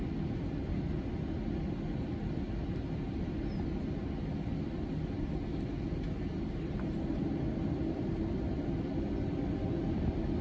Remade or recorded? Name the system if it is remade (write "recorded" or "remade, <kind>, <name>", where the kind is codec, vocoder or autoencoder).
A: recorded